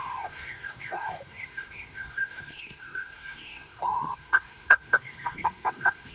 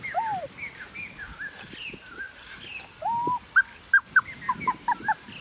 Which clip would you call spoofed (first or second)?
first